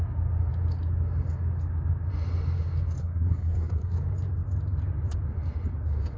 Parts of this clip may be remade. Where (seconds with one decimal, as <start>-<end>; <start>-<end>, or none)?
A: 3.0-4.0